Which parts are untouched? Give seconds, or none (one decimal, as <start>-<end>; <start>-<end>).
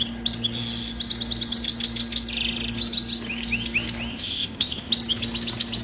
0.0-4.1; 4.9-5.8